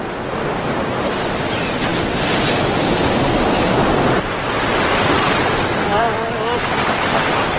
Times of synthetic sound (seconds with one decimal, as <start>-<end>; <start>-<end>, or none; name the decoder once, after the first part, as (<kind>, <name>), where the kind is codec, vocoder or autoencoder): none